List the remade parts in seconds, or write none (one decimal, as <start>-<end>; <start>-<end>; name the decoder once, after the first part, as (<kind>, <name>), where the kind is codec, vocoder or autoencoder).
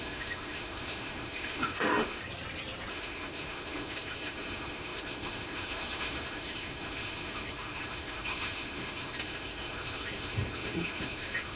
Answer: 0.0-2.2 (autoencoder, DAC-VAE); 2.9-11.6